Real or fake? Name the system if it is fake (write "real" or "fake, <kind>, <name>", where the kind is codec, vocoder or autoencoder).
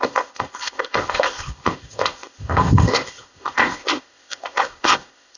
fake, codec, ZipCodec